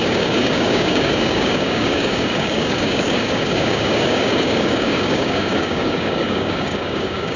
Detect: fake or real fake